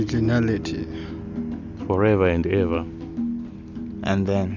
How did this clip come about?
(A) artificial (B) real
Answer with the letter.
B